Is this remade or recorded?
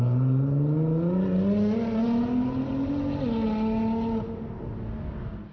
recorded